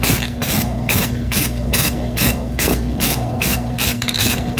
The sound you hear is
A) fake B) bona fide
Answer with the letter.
A